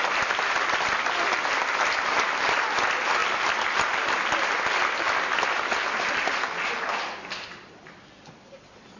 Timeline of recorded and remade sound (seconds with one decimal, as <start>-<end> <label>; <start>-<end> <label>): 0.0-9.0 recorded